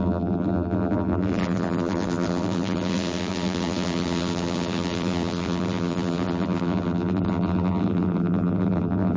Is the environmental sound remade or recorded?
remade